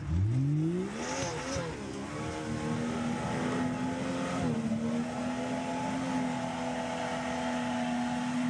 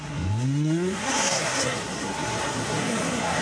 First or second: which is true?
first